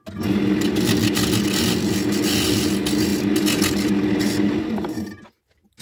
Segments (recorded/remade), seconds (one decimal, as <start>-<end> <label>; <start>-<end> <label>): 0.0-5.8 recorded